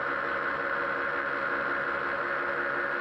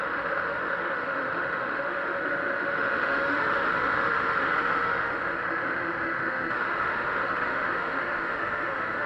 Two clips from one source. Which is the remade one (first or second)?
second